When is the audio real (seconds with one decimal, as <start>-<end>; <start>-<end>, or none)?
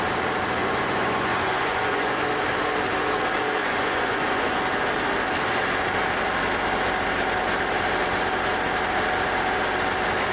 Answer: 0.0-0.6; 2.2-3.6; 4.6-10.3